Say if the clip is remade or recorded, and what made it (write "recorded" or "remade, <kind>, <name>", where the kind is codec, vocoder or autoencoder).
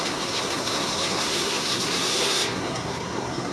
remade, codec, SNAC